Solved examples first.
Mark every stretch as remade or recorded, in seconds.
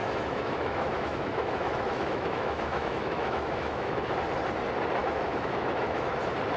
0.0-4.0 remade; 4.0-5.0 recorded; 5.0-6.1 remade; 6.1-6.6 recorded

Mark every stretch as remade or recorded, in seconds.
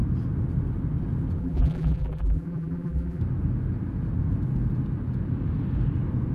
0.0-1.4 recorded; 1.4-3.2 remade; 3.2-6.3 recorded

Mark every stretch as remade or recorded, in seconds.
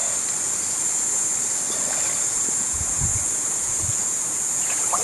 0.0-0.9 recorded; 0.9-1.3 remade; 1.3-2.2 recorded; 2.2-5.0 remade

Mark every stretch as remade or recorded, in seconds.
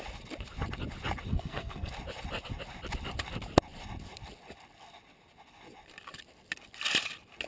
0.0-1.3 recorded; 1.3-1.9 remade; 1.9-7.5 recorded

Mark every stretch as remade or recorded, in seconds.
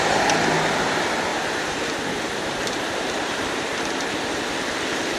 0.0-1.3 recorded; 1.3-4.4 remade; 4.4-5.2 recorded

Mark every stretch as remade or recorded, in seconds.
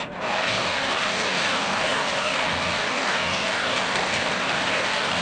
0.0-5.2 remade